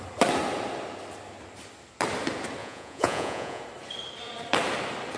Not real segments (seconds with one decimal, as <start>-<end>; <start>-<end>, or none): 2.6-3.6